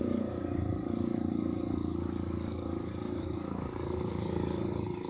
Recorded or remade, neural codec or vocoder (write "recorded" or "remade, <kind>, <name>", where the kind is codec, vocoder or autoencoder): remade, codec, DAC